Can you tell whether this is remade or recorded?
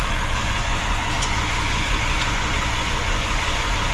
remade